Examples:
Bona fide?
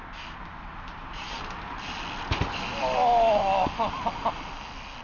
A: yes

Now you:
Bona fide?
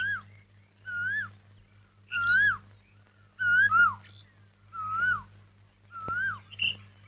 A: yes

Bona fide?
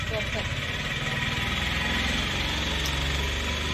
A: yes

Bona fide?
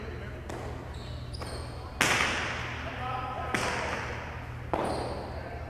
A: yes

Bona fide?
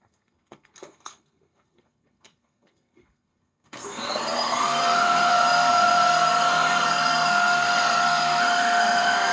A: no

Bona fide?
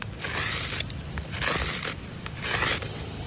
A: yes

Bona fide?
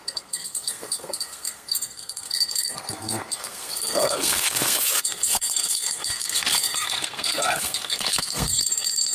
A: no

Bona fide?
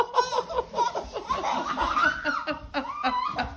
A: yes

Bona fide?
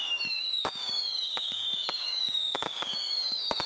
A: no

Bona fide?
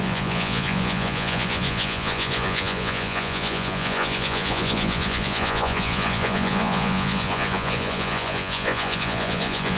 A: no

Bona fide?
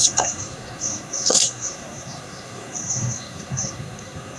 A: no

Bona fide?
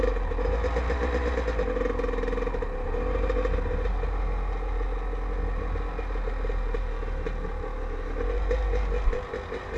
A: yes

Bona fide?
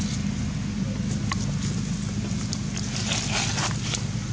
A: yes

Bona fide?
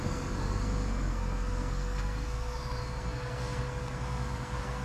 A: no